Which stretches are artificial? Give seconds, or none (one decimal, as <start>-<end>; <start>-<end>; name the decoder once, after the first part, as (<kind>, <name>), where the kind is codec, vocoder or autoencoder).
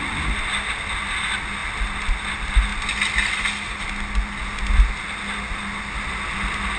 none